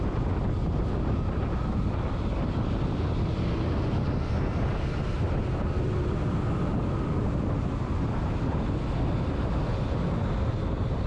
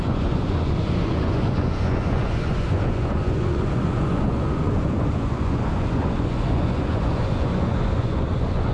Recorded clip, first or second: first